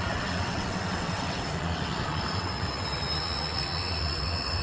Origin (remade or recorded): remade